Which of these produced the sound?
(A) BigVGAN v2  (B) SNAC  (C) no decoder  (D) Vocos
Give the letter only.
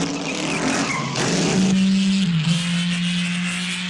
C